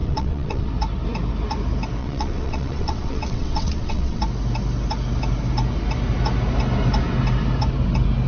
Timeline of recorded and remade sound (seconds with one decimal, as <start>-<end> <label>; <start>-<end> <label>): 0.0-0.7 remade; 0.7-2.0 recorded; 2.0-4.2 remade; 4.2-8.3 recorded